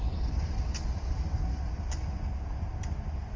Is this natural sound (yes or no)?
yes